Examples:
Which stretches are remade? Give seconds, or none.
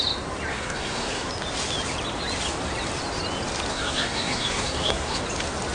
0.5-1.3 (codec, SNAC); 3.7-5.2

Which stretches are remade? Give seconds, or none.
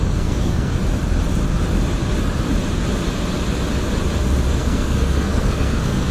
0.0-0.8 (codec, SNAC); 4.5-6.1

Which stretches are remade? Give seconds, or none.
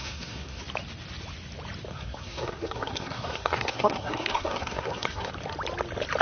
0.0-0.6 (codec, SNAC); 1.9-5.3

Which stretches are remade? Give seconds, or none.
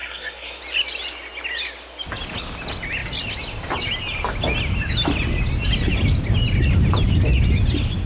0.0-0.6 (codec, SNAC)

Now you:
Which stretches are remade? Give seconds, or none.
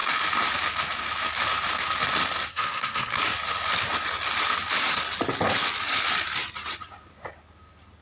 2.5-3.2 (codec, SNAC)